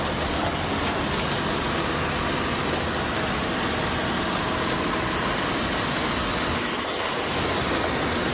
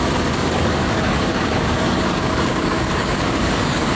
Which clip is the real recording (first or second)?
first